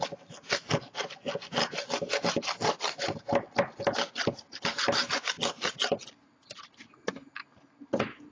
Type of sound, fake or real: real